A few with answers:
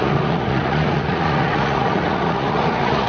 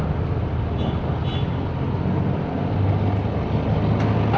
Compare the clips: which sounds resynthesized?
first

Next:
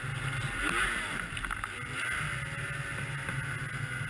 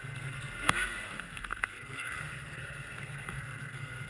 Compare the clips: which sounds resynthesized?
second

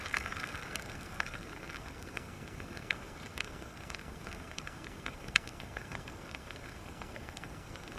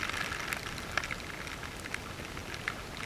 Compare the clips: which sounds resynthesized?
first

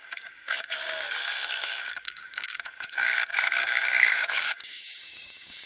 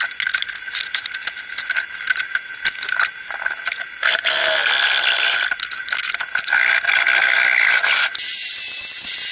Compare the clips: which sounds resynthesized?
first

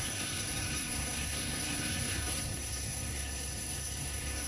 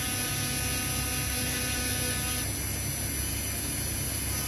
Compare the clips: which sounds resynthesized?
first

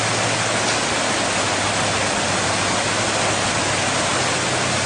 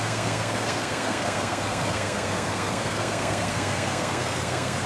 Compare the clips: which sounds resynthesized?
second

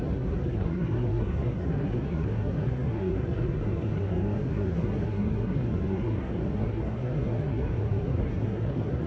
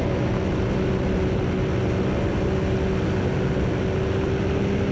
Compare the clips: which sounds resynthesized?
first